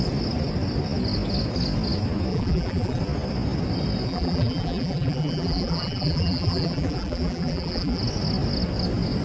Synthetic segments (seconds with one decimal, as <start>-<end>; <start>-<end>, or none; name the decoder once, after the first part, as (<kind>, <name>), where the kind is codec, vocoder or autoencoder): 2.3-3.0 (vocoder, BigVGAN v2); 4.1-8.0